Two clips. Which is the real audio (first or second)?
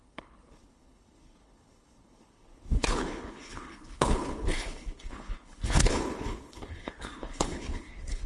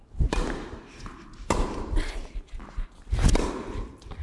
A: second